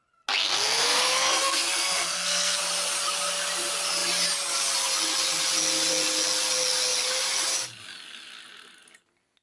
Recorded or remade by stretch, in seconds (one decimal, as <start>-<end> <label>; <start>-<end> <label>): 0.0-0.4 recorded; 0.4-2.6 remade; 2.6-9.4 recorded